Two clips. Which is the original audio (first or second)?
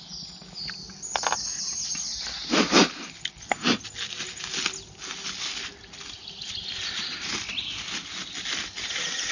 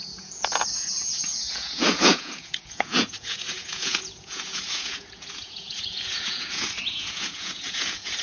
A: first